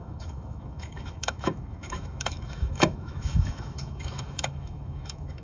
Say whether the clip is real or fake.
fake